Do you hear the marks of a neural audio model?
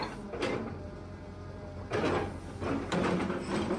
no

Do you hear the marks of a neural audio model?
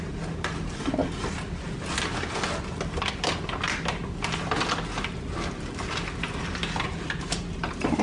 no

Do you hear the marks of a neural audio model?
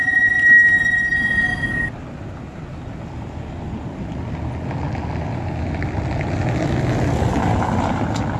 no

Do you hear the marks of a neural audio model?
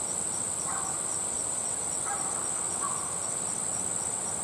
no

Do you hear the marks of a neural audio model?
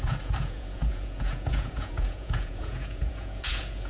yes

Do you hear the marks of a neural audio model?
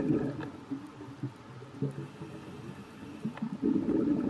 no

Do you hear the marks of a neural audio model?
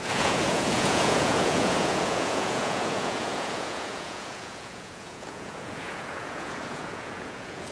yes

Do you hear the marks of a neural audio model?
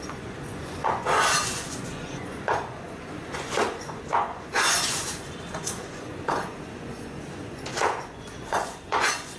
yes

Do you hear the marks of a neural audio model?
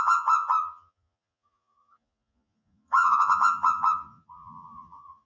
yes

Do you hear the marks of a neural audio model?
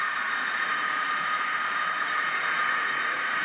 yes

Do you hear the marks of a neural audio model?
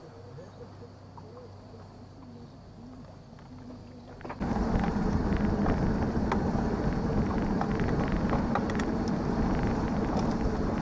no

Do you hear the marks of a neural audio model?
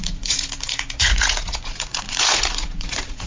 yes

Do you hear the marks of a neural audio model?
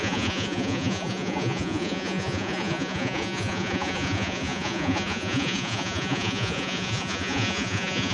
yes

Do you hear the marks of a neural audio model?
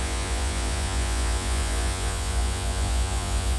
yes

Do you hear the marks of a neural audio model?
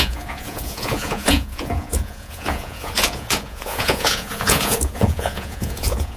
yes